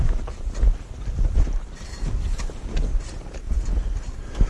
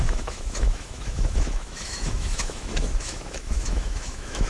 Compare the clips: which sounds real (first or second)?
first